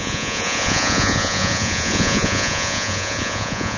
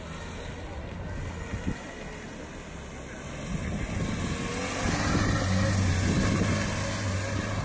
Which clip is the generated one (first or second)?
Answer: first